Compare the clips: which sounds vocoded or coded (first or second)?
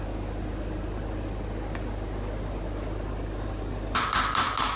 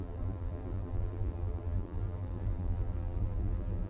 second